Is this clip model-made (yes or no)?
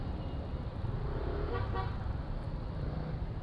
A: no